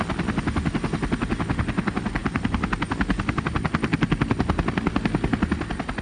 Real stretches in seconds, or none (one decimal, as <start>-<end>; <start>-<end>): 0.0-6.0